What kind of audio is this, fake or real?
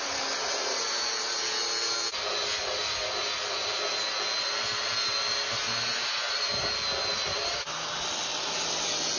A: real